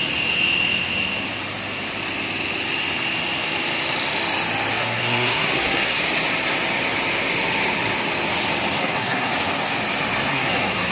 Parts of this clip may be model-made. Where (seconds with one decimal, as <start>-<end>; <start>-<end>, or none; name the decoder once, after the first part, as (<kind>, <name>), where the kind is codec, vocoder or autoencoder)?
4.8-6.0 (codec, SNAC); 8.8-9.3; 10.3-10.9